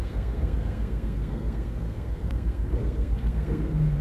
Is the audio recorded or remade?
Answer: remade